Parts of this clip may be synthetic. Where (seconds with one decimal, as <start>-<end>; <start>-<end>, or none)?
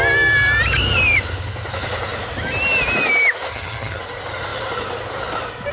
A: 3.5-4.0